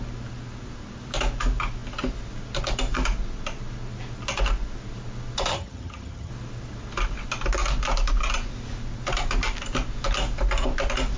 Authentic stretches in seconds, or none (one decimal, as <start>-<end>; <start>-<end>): 0.0-5.5; 6.3-11.2